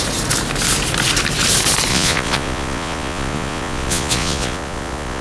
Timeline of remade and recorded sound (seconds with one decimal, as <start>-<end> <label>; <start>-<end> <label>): 0.0-1.9 recorded; 1.9-5.2 remade